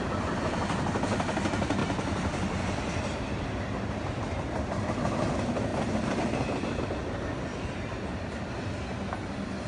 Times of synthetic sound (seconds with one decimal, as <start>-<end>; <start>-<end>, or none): 1.8-3.6; 5.7-6.8